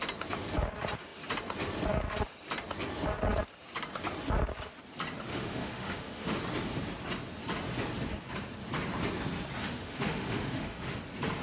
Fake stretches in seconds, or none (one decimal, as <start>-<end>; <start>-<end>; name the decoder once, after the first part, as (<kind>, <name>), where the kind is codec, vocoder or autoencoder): 5.3-6.4 (autoencoder, DAC-VAE); 9.6-11.0